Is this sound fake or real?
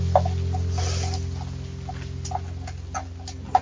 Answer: real